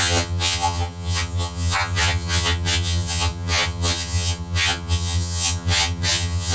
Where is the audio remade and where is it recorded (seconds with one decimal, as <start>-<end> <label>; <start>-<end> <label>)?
0.0-6.5 remade

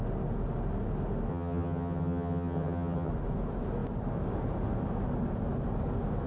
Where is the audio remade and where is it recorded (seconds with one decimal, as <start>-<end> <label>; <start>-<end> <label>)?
0.0-1.3 recorded; 1.3-3.1 remade; 3.1-6.3 recorded

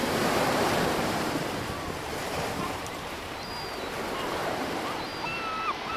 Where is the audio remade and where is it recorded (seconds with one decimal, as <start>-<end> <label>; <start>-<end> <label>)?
0.0-3.5 remade; 3.5-4.4 recorded; 4.4-5.0 remade; 5.0-6.0 recorded

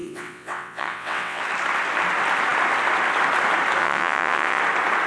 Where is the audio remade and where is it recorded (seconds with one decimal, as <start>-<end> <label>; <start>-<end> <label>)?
0.0-1.4 remade; 1.4-3.8 recorded; 3.8-4.6 remade; 4.6-5.1 recorded